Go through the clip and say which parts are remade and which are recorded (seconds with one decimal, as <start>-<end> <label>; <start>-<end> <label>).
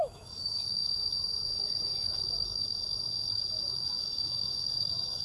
0.0-5.2 remade